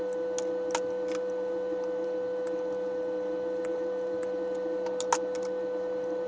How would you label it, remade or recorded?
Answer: recorded